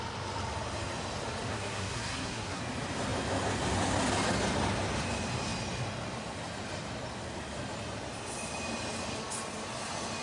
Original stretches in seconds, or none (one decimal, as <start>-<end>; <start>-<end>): 0.0-1.5; 2.6-10.2